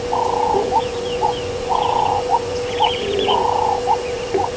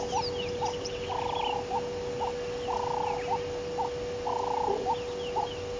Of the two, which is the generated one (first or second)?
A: first